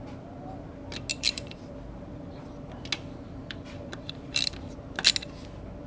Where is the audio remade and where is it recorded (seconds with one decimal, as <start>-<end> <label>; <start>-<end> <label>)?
0.0-1.1 recorded; 1.1-2.3 remade; 2.3-3.4 recorded; 3.4-4.6 remade; 4.6-5.9 recorded